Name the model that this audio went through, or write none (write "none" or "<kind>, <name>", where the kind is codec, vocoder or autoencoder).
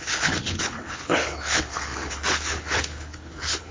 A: codec, HILCodec